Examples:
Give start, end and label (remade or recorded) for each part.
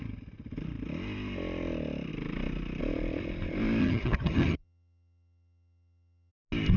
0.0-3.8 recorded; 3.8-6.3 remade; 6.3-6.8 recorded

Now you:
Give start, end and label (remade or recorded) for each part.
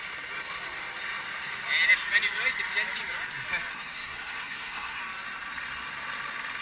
0.0-3.7 recorded; 3.7-5.0 remade; 5.0-6.6 recorded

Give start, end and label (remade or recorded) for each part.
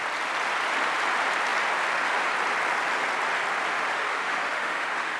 0.0-3.7 recorded; 3.7-5.2 remade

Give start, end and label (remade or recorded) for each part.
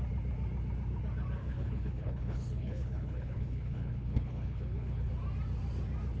0.0-1.4 recorded; 1.4-5.1 remade; 5.1-6.2 recorded